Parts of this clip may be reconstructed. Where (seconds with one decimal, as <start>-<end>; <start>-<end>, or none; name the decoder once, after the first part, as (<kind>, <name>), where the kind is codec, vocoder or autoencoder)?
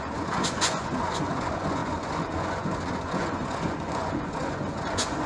0.0-5.3 (vocoder, Vocos)